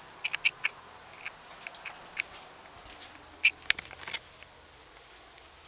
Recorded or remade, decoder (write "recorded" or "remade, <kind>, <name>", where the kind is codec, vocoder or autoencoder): recorded